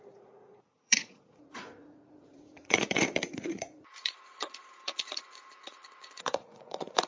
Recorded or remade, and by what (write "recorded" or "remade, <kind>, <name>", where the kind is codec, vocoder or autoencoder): remade, vocoder, Vocos